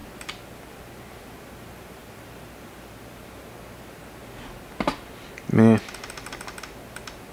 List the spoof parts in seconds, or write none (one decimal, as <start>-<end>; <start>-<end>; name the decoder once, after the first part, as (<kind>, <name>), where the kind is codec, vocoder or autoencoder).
none